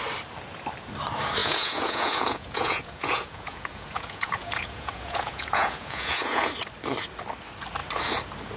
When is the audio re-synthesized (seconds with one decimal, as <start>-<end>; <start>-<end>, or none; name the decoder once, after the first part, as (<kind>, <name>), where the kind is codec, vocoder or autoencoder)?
1.4-6.5 (vocoder, Vocos)